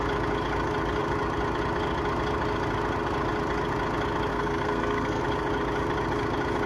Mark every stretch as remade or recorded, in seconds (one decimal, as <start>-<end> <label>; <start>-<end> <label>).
0.0-4.3 recorded; 4.3-5.2 remade; 5.2-6.7 recorded